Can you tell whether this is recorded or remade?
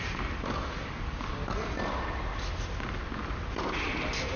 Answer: recorded